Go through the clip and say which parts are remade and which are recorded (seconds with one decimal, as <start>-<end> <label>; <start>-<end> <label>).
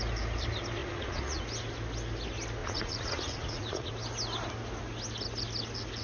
0.0-0.8 recorded; 0.8-1.4 remade; 1.4-2.6 recorded; 2.6-3.9 remade; 3.9-6.0 recorded